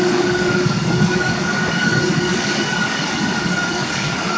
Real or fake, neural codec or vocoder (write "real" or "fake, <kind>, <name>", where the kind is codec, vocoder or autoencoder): fake, codec, DAC